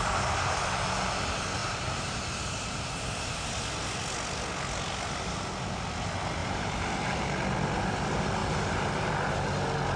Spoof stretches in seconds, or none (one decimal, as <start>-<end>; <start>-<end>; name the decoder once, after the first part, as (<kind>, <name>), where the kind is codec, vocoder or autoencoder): 1.6-3.6 (vocoder, BigVGAN v2); 6.4-7.1; 8.4-9.1